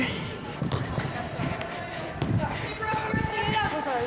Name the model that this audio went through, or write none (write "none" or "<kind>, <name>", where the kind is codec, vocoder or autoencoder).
none